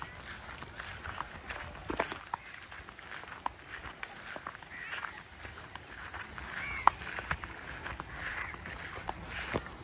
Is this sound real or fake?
real